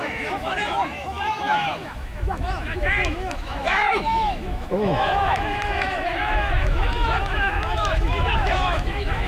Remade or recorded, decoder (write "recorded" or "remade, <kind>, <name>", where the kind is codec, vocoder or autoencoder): remade, autoencoder, DAC-VAE